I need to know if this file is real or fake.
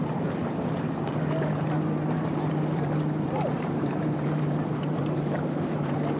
fake